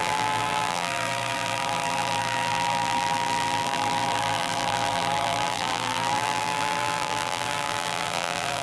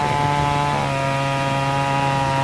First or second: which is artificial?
first